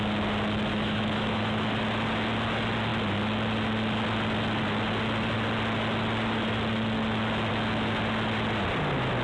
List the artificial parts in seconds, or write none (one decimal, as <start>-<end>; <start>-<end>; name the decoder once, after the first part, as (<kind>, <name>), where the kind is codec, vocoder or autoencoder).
0.7-1.7 (autoencoder, DAC-VAE)